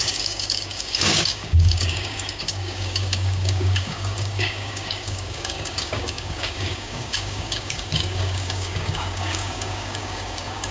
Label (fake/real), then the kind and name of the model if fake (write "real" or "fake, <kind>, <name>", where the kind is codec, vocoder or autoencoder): fake, codec, DAC